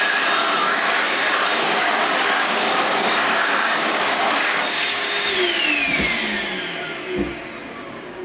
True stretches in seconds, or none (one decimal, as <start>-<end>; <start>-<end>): 0.0-0.4; 5.3-7.6